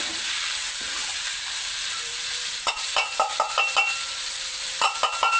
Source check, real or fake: fake